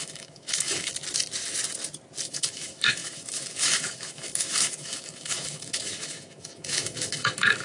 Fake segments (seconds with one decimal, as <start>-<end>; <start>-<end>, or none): 0.0-0.9; 2.3-7.6